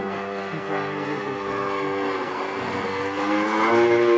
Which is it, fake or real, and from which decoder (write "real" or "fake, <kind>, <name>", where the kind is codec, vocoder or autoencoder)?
fake, codec, SNAC